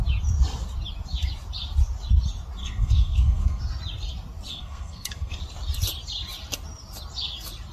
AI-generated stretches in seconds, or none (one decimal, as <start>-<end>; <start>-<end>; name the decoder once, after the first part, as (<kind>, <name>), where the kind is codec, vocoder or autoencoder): 2.6-3.6 (codec, SNAC); 4.5-5.4